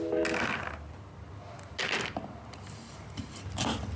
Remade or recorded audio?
recorded